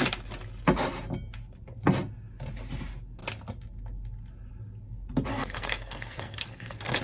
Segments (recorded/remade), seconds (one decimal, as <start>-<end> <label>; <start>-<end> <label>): 0.0-5.3 recorded; 5.3-7.0 remade